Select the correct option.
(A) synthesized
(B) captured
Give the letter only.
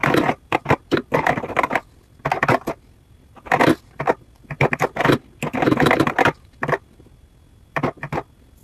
B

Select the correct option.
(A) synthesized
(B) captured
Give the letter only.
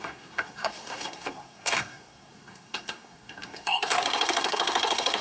A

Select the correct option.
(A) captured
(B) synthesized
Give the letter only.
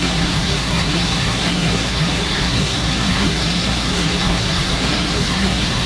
B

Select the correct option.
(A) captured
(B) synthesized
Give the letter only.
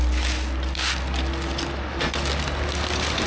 A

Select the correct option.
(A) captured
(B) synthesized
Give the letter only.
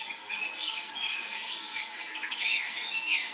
B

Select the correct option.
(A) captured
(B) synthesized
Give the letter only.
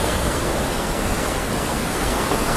B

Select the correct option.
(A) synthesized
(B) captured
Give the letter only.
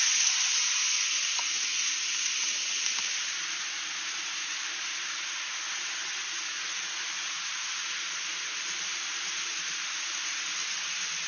B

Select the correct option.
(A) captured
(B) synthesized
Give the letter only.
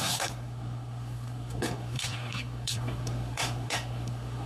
B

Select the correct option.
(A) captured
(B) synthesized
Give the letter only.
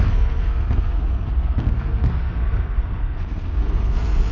B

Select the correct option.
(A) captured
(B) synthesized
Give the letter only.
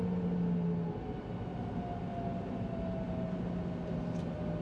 A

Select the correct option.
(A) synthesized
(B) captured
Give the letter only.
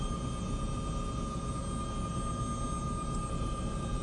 B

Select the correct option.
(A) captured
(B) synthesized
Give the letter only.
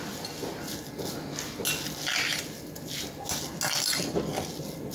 A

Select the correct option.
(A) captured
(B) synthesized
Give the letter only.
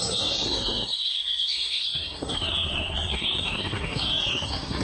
B